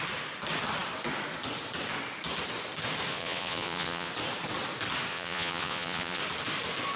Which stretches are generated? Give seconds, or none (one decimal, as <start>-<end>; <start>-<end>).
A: 3.1-4.1; 5.1-6.2